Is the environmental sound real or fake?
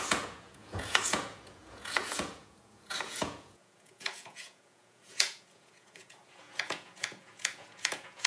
fake